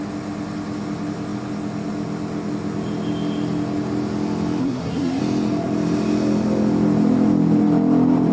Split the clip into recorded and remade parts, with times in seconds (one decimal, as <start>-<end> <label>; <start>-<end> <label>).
0.0-4.6 recorded; 4.6-5.2 remade; 5.2-8.3 recorded